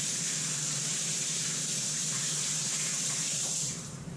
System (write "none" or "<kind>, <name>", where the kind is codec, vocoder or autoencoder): vocoder, BigVGAN v2